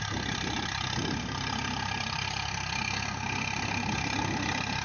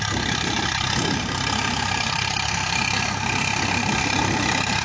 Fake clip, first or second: second